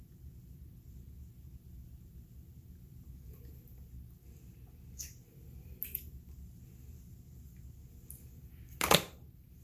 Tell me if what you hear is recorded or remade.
recorded